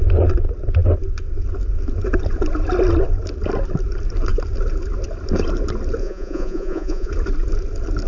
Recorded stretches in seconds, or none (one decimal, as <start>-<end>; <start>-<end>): 0.0-6.0; 7.1-8.1

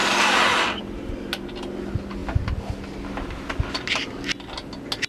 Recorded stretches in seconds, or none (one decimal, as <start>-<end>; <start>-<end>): 0.0-5.1

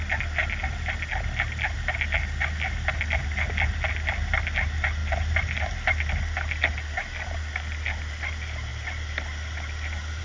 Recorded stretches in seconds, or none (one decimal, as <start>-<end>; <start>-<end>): 0.0-10.2

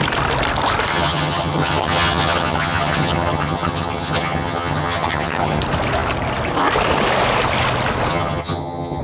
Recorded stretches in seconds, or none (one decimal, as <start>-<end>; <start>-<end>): 0.0-0.9; 5.6-8.1